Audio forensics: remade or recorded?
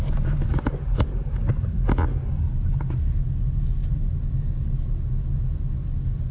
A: recorded